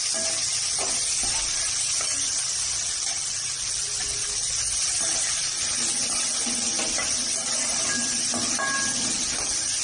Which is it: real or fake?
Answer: real